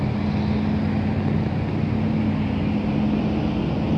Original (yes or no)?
yes